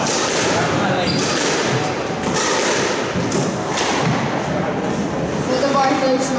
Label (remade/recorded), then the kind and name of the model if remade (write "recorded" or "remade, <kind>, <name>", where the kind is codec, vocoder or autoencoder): recorded